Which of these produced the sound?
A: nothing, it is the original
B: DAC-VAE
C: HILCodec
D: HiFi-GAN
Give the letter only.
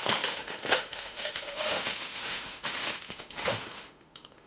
B